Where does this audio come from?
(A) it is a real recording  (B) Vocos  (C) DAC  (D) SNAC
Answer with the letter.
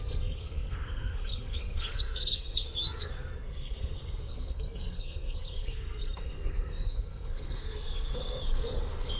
D